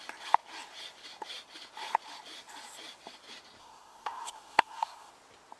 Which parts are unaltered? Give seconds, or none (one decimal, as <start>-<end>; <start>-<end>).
0.0-3.6; 5.1-5.6